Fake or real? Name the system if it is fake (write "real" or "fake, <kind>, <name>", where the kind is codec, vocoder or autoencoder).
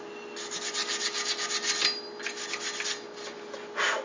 real